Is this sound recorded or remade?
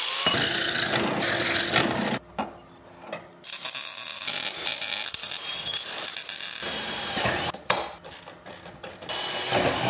recorded